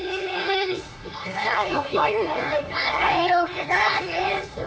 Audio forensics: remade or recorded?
remade